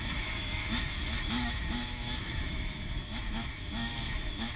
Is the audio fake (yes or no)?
yes